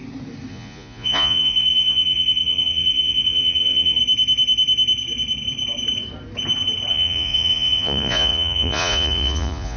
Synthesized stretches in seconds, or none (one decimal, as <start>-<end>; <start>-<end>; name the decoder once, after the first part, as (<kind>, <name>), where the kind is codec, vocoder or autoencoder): 0.5-4.0 (vocoder, Vocos); 6.9-9.8